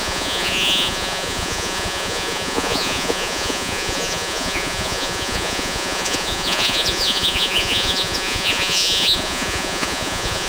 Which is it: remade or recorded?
remade